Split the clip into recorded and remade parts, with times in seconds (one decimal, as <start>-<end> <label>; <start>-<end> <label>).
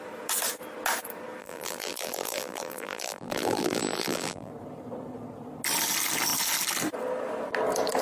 0.0-1.4 recorded; 1.4-4.5 remade; 4.5-8.0 recorded